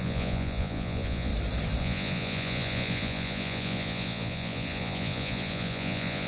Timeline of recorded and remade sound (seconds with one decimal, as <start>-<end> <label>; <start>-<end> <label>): 0.0-1.3 remade; 1.3-1.8 recorded; 1.8-6.3 remade